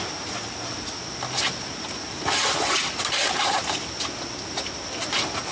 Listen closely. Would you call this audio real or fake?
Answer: real